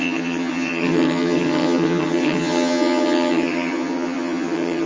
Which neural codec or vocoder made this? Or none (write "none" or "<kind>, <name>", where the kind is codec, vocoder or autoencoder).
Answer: vocoder, HiFi-GAN